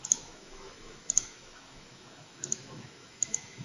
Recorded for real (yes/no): no